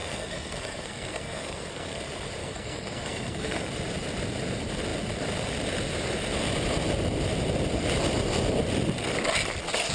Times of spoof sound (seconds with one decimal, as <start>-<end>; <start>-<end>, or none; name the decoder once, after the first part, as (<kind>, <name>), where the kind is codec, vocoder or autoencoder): 0.0-2.0 (codec, SNAC); 2.4-3.7